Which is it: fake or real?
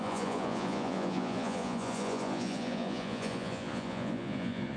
fake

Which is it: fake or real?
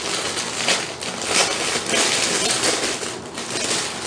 real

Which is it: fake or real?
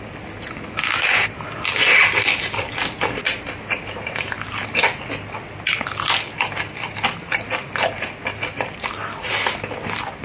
real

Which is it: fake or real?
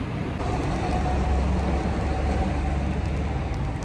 real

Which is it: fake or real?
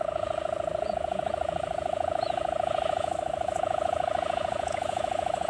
fake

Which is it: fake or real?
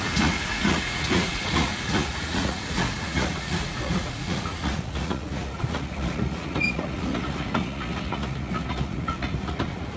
fake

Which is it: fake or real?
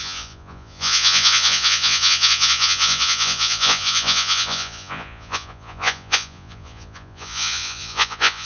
fake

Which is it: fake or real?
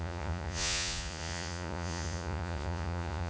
fake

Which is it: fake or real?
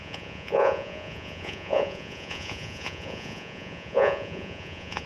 fake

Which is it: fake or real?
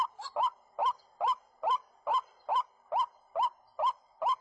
real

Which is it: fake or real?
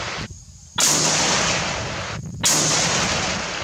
real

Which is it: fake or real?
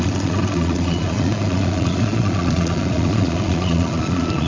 fake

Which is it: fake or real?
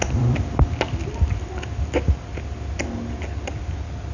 real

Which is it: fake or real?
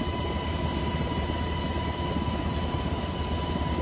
real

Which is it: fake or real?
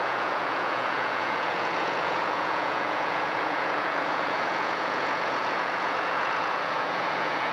fake